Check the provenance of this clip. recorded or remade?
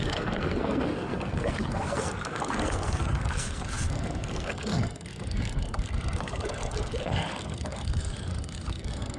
remade